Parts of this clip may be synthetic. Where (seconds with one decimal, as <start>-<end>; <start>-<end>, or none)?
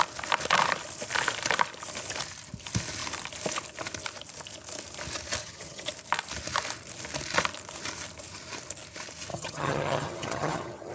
5.4-5.9; 9.3-10.9